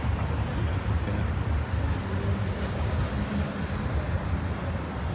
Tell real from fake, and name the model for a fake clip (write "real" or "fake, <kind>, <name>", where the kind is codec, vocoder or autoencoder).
real